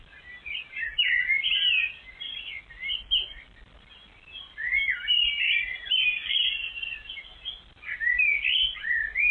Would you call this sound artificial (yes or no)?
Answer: no